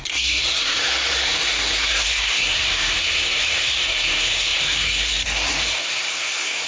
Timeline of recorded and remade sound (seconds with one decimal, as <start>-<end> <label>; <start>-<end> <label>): 0.0-6.7 remade